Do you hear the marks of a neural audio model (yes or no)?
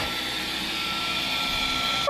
no